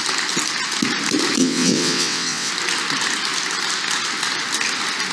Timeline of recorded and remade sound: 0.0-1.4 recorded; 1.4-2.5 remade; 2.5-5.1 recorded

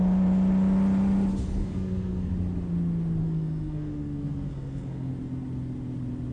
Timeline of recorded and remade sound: 0.0-1.6 recorded; 1.6-2.3 remade; 2.3-3.2 recorded; 3.2-5.1 remade; 5.1-6.3 recorded

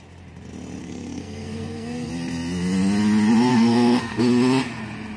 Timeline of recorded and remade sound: 0.0-0.8 recorded; 0.8-2.1 remade; 2.1-3.5 recorded; 3.5-4.2 remade; 4.2-5.2 recorded

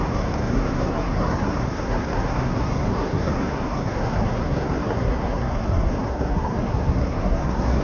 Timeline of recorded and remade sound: 0.0-7.8 remade

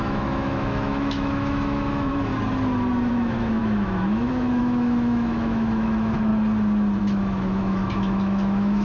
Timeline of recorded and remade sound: 0.0-2.3 remade; 2.3-3.1 recorded; 3.1-6.3 remade; 6.3-7.0 recorded; 7.0-8.8 remade

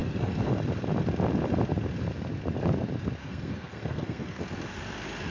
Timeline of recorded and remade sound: 0.0-0.5 remade; 0.5-3.2 recorded; 3.2-4.4 remade; 4.4-5.3 recorded

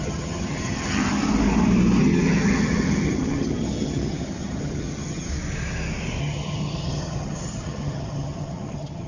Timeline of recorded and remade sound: 0.0-1.1 remade; 1.1-2.0 recorded; 2.0-5.3 remade; 5.3-6.2 recorded; 6.2-9.1 remade